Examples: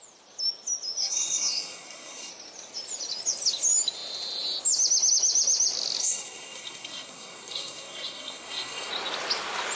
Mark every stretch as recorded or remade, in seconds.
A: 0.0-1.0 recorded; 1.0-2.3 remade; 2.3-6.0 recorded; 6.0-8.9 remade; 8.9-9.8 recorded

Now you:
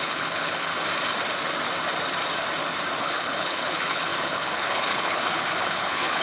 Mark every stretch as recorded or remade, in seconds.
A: 0.0-0.7 remade; 0.7-3.0 recorded; 3.0-6.2 remade

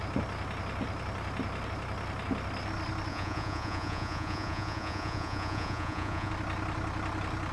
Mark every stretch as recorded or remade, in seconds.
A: 0.0-3.1 recorded; 3.1-6.3 remade; 6.3-7.5 recorded

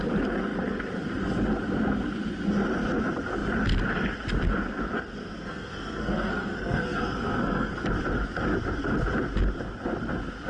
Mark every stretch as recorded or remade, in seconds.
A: 0.0-5.2 recorded; 5.2-7.7 remade; 7.7-10.5 recorded

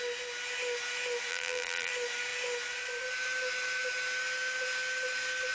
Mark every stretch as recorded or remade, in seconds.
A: 0.0-1.3 recorded; 1.3-1.9 remade; 1.9-5.5 recorded

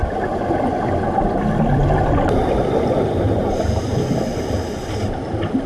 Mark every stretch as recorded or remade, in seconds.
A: 0.0-5.7 recorded

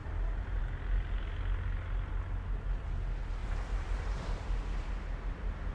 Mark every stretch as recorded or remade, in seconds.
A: 0.0-3.4 recorded; 3.4-4.9 remade; 4.9-5.7 recorded

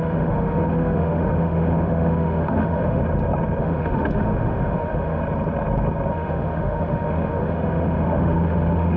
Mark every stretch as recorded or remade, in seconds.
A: 0.0-3.0 remade; 3.0-3.6 recorded; 3.6-5.2 remade; 5.2-6.1 recorded; 6.1-9.0 remade